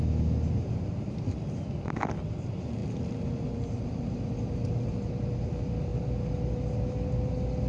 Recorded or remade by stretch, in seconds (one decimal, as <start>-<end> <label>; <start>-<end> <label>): 0.0-7.7 recorded